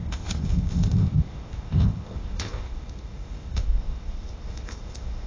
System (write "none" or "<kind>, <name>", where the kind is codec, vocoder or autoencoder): codec, ZipCodec